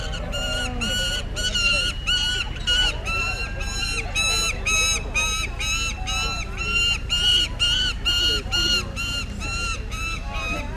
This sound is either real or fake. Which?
real